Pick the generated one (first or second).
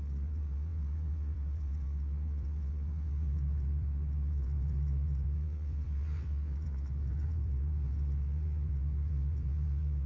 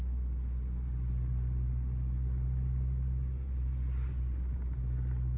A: first